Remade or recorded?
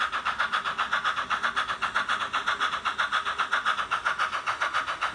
recorded